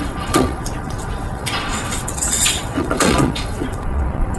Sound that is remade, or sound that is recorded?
remade